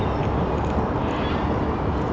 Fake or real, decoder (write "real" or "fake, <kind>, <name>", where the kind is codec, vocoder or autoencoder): real